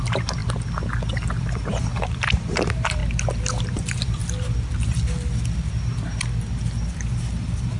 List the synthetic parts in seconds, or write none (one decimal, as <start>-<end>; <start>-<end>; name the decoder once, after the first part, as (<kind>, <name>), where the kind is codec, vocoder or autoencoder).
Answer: 0.0-0.4 (vocoder, BigVGAN v2); 1.4-3.0; 3.6-4.2; 6.9-7.8